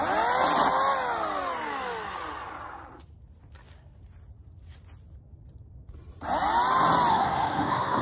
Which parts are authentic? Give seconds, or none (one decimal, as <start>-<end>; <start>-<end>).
0.0-7.1